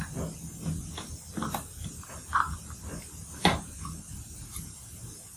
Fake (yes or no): no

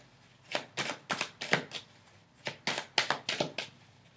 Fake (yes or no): no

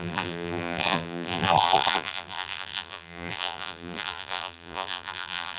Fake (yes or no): yes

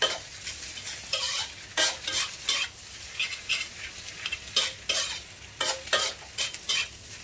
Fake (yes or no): no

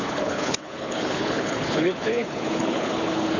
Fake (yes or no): yes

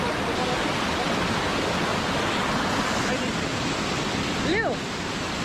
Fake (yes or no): no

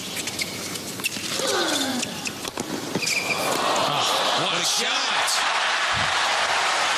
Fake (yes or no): no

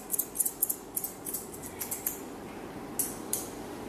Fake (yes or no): no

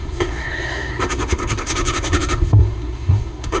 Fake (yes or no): yes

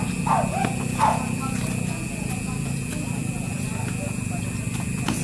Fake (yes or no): no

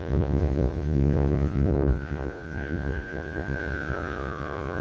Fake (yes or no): yes